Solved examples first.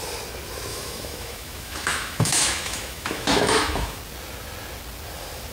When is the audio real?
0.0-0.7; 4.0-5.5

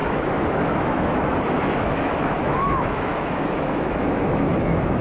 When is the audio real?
none

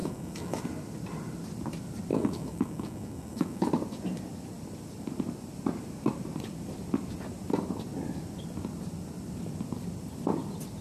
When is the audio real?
0.6-2.1; 3.7-10.8

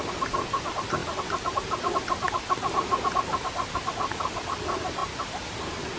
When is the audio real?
0.0-6.0

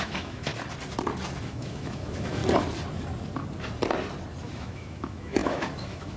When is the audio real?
0.5-1.4; 2.4-4.4

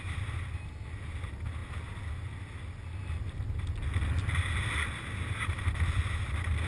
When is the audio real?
0.0-6.7